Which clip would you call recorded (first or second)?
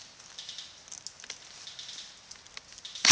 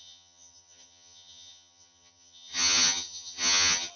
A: first